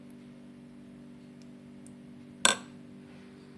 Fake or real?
real